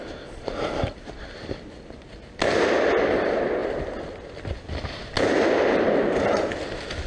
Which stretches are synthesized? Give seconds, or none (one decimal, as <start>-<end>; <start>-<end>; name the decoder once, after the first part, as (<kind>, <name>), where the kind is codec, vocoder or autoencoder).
none